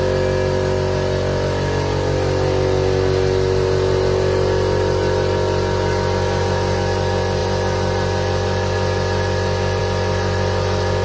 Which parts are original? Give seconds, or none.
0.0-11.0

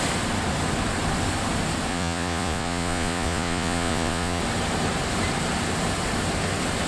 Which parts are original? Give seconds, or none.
0.0-1.9; 4.4-6.9

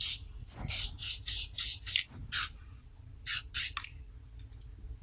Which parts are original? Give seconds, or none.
0.0-5.0

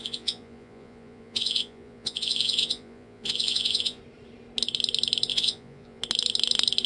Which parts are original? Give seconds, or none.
4.0-5.3; 6.0-6.9